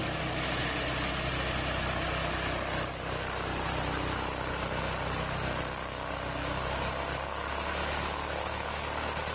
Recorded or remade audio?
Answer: recorded